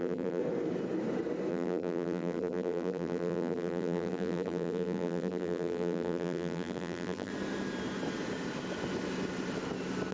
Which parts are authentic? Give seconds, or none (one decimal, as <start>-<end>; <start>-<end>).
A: 0.4-1.5; 7.3-10.1